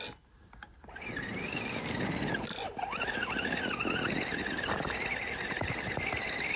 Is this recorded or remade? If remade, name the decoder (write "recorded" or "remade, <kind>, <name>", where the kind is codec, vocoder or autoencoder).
recorded